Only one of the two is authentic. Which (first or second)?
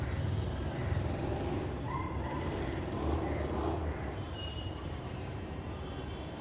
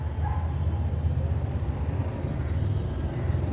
second